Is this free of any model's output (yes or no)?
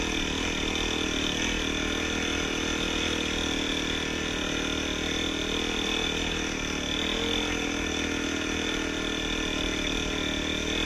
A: yes